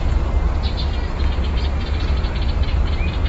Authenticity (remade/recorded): recorded